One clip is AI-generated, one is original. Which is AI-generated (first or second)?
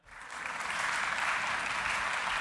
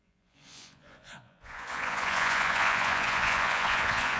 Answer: second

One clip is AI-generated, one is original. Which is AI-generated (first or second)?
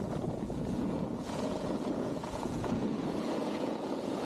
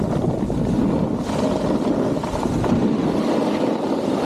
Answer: first